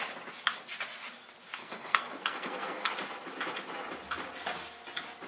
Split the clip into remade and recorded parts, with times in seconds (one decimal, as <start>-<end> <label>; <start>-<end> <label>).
0.0-1.6 recorded; 1.6-2.9 remade; 2.9-5.3 recorded